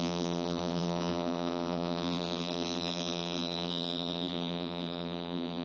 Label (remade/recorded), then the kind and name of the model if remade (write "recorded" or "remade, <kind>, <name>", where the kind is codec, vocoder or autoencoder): remade, vocoder, BigVGAN v2